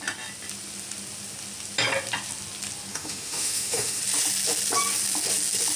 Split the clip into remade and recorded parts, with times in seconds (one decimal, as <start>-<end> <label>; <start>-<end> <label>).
0.0-2.9 recorded; 2.9-4.0 remade; 4.0-5.8 recorded